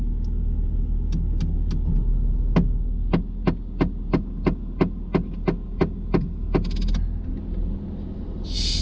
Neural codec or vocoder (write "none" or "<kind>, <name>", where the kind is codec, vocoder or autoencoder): none